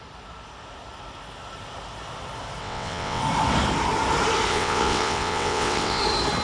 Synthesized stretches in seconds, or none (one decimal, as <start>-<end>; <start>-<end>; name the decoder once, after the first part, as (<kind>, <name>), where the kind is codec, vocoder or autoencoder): 2.6-3.2 (vocoder, WaveNeXt); 4.5-6.0